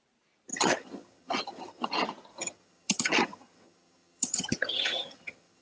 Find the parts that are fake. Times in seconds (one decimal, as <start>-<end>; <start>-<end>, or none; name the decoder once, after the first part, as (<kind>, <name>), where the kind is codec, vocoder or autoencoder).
0.5-1.9 (vocoder, HiFi-GAN); 2.3-5.6